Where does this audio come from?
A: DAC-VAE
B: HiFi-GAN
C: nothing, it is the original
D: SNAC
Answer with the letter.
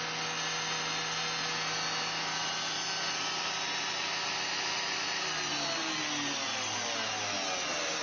C